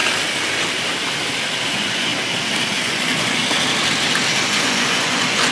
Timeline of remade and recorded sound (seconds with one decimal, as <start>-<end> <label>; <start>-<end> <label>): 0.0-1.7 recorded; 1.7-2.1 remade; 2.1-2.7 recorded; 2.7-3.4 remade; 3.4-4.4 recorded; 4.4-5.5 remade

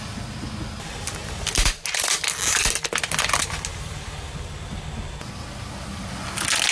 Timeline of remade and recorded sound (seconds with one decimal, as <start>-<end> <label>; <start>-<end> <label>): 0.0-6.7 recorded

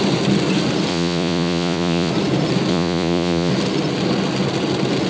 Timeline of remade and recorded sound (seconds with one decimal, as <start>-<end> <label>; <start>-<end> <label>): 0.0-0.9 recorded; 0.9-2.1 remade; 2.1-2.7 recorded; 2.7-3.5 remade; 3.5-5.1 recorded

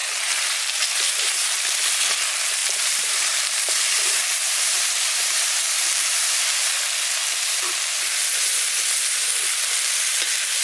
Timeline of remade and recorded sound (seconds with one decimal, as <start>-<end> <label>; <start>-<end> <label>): 0.0-1.6 remade; 1.6-2.6 recorded; 2.6-6.4 remade; 6.4-10.6 recorded

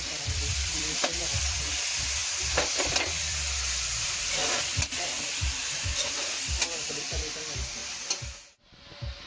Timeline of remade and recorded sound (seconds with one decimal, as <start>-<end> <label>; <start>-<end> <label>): 0.0-7.8 remade; 7.8-9.3 recorded

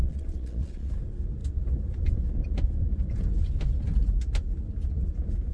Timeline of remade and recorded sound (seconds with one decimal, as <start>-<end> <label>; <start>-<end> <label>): 0.0-0.9 remade; 0.9-5.5 recorded

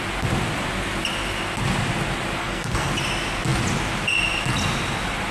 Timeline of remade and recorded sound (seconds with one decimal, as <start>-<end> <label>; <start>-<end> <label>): 0.0-2.4 recorded; 2.4-2.9 remade; 2.9-5.3 recorded

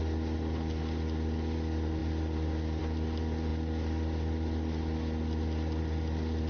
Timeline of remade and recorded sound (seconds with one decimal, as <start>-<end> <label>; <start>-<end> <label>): 0.0-6.5 recorded